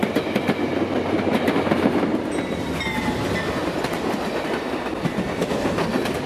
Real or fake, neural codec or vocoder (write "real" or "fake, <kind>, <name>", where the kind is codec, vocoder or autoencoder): real